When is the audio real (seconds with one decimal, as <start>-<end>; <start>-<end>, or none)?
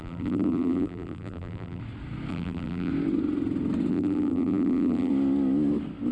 1.8-2.3; 2.9-3.9; 5.1-6.1